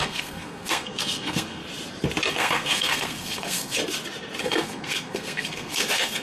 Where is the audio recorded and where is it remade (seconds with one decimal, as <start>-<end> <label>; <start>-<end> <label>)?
0.0-1.6 remade; 1.6-2.3 recorded; 2.3-3.8 remade; 3.8-4.4 recorded; 4.4-6.2 remade